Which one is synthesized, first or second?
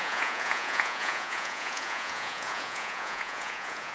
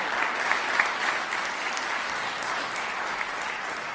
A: first